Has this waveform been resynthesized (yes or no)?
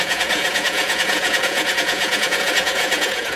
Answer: yes